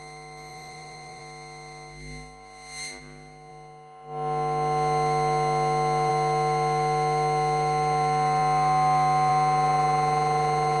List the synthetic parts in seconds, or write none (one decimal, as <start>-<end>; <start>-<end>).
0.5-1.2